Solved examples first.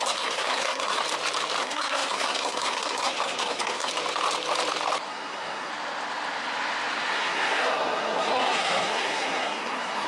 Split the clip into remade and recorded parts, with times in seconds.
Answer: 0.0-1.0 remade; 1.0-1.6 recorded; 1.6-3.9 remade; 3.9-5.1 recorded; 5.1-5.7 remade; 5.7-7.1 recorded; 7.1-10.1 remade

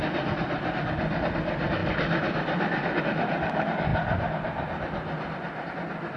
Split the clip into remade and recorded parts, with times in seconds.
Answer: 0.0-6.2 recorded